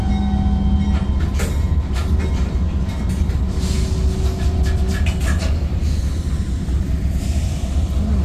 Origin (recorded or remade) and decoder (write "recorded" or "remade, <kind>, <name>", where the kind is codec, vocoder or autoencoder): recorded